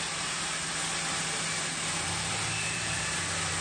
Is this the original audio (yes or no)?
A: yes